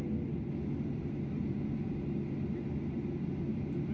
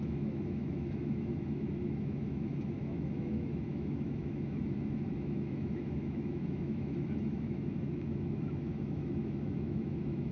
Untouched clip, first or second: first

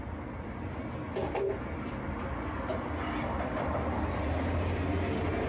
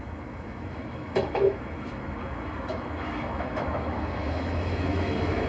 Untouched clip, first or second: first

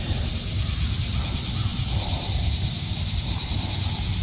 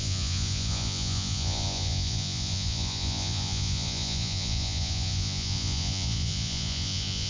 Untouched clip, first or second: first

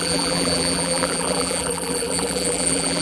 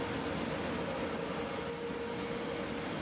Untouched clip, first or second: second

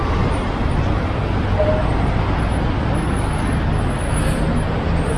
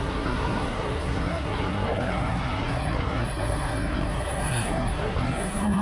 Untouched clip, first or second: first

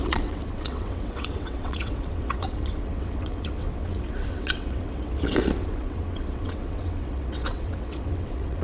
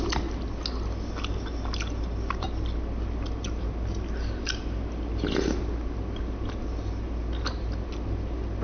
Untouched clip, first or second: second